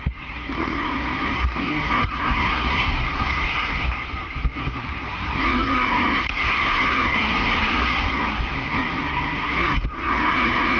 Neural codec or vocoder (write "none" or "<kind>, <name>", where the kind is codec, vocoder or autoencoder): codec, SNAC